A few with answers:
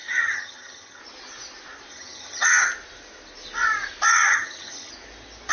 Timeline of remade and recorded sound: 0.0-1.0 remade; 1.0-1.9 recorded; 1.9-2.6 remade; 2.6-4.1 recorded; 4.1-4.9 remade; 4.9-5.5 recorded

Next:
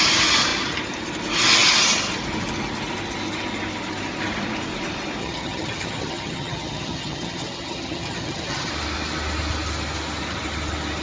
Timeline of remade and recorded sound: 0.0-5.2 recorded; 5.2-8.7 remade; 8.7-11.0 recorded